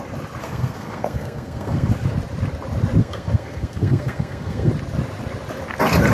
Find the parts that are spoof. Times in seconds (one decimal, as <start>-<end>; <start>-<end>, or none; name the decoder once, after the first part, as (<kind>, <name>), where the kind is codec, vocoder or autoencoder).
0.4-1.9 (codec, SNAC); 3.0-4.7